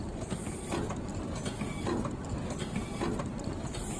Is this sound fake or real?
real